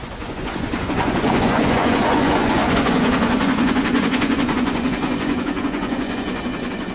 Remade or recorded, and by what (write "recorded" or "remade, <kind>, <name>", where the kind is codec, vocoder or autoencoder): remade, vocoder, Vocos